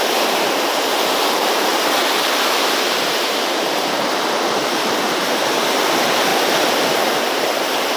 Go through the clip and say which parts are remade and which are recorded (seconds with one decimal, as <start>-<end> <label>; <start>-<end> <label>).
0.0-6.3 remade; 6.3-7.2 recorded; 7.2-8.0 remade